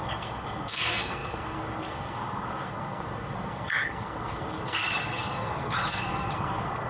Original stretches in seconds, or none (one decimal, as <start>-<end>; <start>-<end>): none